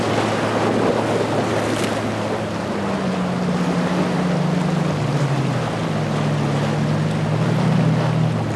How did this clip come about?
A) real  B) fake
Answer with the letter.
A